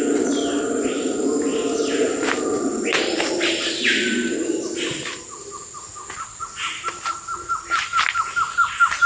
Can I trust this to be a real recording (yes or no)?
yes